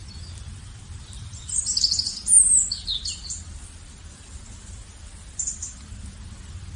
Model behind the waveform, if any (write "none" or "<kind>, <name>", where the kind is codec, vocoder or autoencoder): none